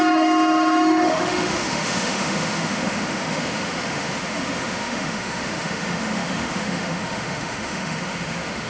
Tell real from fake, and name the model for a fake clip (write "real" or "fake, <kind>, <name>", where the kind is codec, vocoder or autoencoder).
fake, autoencoder, DAC-VAE